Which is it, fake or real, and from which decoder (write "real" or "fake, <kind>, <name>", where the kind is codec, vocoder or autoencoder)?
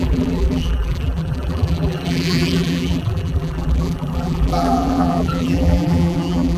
fake, vocoder, BigVGAN v2